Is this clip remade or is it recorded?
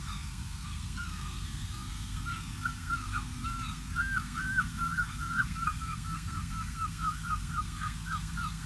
remade